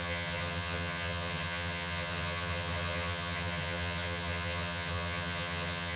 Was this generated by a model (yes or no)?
yes